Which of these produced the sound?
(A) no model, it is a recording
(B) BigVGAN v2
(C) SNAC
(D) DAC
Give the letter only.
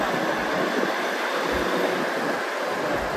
A